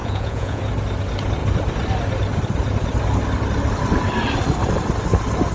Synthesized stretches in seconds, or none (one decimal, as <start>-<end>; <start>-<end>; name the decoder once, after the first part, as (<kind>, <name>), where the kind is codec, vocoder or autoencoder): 0.0-0.6 (vocoder, Vocos)